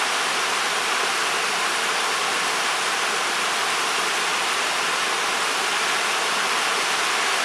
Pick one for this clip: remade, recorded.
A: recorded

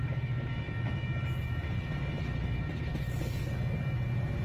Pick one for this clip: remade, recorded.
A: recorded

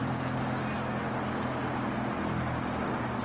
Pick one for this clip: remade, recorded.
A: recorded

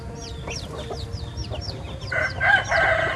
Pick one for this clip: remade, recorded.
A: recorded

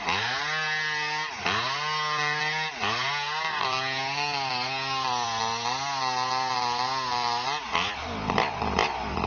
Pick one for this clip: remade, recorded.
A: recorded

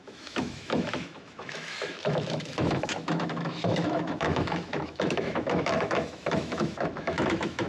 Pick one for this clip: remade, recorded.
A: remade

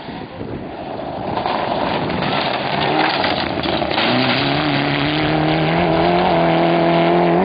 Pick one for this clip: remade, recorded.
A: recorded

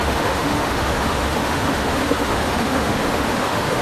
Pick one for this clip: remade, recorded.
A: remade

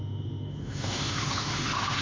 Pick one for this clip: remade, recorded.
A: remade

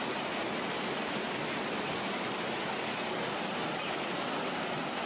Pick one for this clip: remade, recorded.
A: recorded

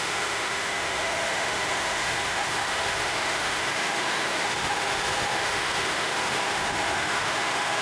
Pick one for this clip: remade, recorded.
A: remade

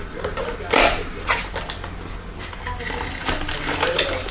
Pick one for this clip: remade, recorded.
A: recorded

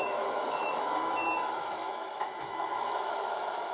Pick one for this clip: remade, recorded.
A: remade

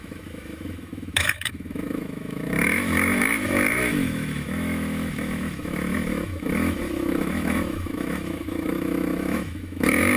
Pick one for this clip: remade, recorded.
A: remade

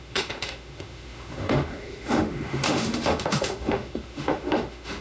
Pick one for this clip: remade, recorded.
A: remade